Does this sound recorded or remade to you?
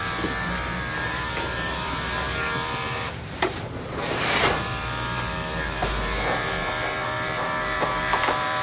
remade